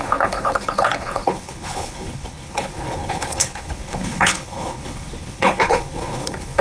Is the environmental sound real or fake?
fake